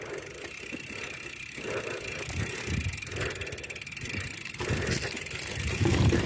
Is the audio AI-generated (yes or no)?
no